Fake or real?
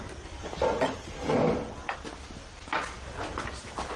real